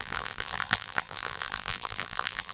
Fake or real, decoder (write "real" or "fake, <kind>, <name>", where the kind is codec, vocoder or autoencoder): fake, vocoder, BigVGAN v2